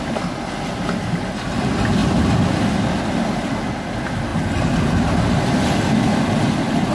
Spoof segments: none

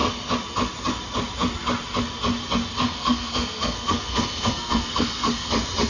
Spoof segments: 2.8-5.5 (codec, SNAC)

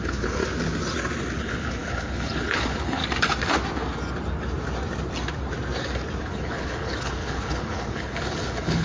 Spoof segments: 0.0-0.4 (codec, HILCodec); 1.4-3.0; 6.2-8.8

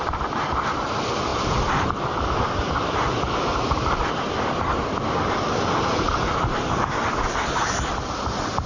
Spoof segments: none

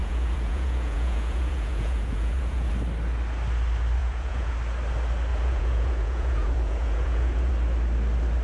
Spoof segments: 0.0-2.7 (vocoder, Vocos); 4.0-4.5; 5.3-7.5